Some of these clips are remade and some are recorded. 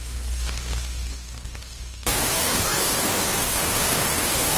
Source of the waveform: remade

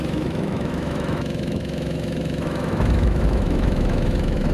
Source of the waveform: remade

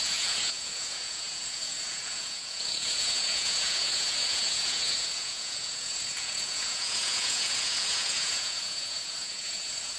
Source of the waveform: remade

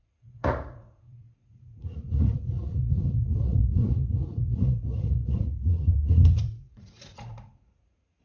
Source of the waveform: remade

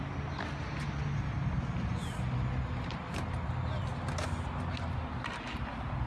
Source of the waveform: recorded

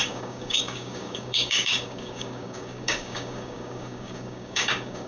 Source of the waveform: remade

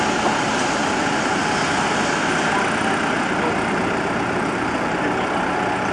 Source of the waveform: recorded